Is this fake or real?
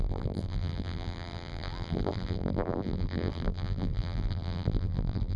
fake